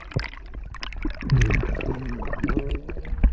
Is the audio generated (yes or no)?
no